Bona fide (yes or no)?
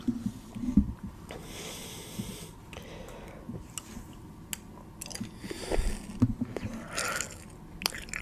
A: yes